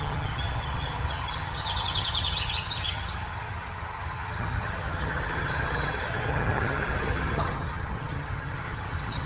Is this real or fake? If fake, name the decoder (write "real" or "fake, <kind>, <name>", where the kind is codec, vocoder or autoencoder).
fake, vocoder, HiFi-GAN